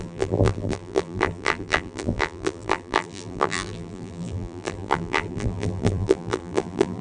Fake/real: fake